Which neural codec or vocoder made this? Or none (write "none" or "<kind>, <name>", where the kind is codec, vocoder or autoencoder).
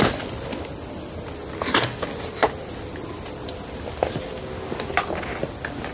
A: none